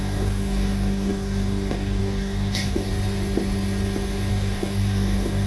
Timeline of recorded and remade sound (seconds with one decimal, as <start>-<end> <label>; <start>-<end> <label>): 0.0-2.9 remade; 2.9-4.3 recorded; 4.3-5.5 remade